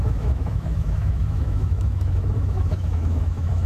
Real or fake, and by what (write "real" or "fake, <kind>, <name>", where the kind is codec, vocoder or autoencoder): fake, autoencoder, DAC-VAE